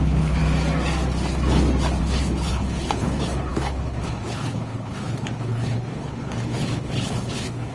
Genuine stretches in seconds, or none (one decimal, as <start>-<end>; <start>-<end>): 0.4-2.0

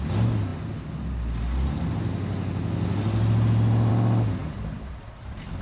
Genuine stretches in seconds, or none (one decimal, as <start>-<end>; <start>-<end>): 0.0-4.4

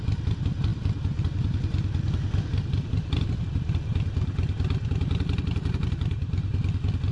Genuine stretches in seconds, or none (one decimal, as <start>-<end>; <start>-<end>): 0.0-7.1